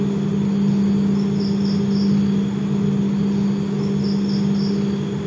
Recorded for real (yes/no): yes